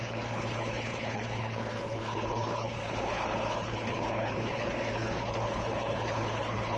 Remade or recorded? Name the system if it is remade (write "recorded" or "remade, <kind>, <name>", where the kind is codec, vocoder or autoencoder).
remade, codec, HILCodec